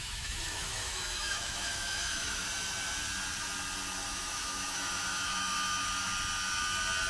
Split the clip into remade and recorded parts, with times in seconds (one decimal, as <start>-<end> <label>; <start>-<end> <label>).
0.0-2.4 remade; 2.4-4.1 recorded; 4.1-6.1 remade; 6.1-7.1 recorded